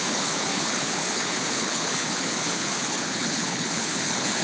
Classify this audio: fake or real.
fake